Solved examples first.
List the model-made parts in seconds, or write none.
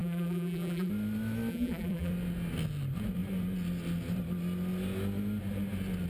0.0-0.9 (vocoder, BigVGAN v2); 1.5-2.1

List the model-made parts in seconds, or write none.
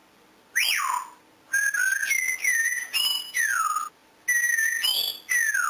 2.5-3.4 (vocoder, BigVGAN v2)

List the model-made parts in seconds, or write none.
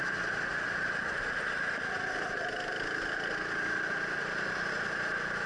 none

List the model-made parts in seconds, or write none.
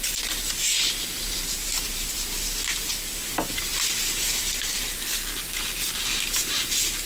none